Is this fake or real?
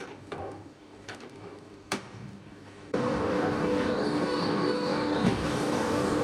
fake